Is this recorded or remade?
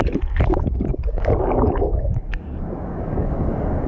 remade